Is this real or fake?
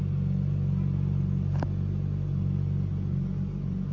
real